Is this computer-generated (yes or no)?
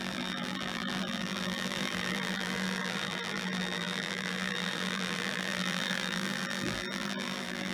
yes